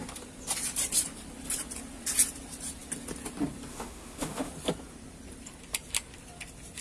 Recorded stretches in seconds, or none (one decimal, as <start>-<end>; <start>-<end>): 0.0-3.7; 4.5-6.8